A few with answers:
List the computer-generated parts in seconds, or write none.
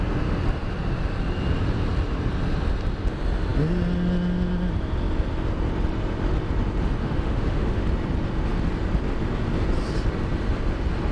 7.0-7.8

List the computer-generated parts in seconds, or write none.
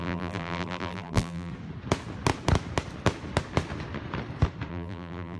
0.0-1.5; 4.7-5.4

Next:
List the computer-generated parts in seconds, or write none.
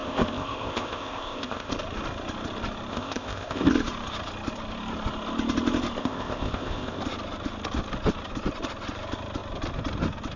0.0-1.7; 2.9-3.7; 6.0-7.0